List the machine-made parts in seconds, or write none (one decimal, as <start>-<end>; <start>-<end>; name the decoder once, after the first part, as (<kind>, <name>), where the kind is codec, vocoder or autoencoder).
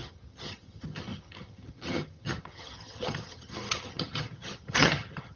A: 0.0-5.4 (vocoder, HiFi-GAN)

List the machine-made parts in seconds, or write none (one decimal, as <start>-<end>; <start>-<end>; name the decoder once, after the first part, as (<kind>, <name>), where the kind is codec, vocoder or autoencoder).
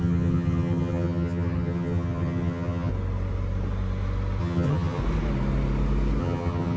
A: 0.0-2.9 (vocoder, HiFi-GAN); 4.4-5.0; 6.2-6.8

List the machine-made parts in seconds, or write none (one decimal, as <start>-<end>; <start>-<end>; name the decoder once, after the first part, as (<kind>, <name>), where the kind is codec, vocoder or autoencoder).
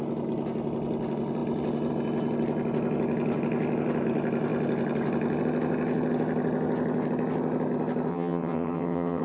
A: 8.1-9.2 (vocoder, HiFi-GAN)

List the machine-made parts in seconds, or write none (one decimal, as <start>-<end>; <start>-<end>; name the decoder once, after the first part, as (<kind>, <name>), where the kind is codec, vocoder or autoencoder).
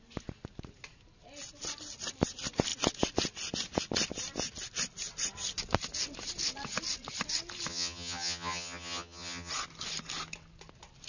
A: 7.7-9.5 (vocoder, HiFi-GAN)